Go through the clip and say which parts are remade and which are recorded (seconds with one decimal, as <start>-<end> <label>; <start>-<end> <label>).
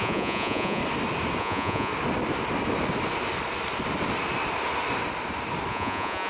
0.0-0.8 remade; 0.8-1.4 recorded; 1.4-1.9 remade; 1.9-5.7 recorded; 5.7-6.3 remade